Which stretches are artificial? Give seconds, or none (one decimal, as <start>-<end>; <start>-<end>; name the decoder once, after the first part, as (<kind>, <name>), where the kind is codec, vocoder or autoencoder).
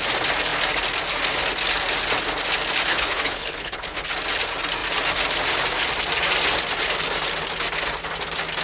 2.9-4.1 (codec, HILCodec)